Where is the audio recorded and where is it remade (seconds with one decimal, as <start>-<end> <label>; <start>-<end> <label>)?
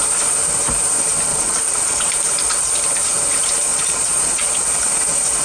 0.0-1.3 recorded; 1.3-2.0 remade; 2.0-3.7 recorded; 3.7-4.6 remade; 4.6-5.4 recorded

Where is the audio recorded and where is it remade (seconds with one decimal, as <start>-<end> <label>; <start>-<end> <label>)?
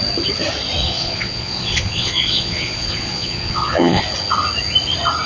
0.0-0.8 recorded; 0.8-4.0 remade; 4.0-5.3 recorded